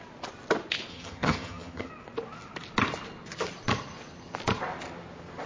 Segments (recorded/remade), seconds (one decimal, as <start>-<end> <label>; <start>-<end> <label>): 0.0-0.9 recorded; 0.9-1.9 remade; 1.9-5.5 recorded